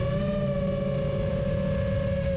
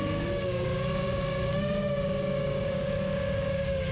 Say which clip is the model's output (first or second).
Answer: second